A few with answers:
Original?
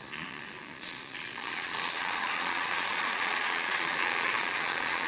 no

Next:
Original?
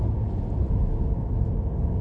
yes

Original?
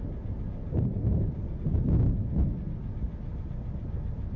yes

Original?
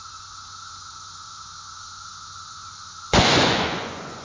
no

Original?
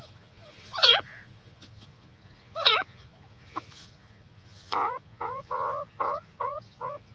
no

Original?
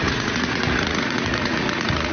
no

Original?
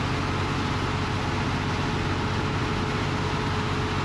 yes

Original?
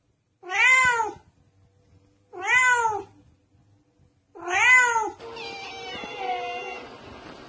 yes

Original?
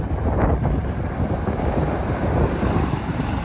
yes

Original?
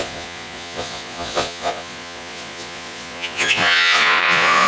no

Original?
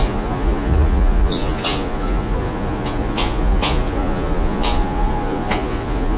no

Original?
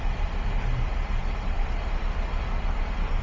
yes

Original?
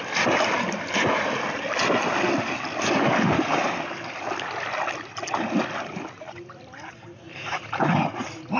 yes